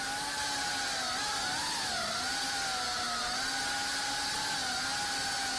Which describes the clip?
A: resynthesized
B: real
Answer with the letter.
B